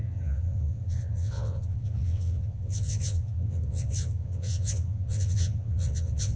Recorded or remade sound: remade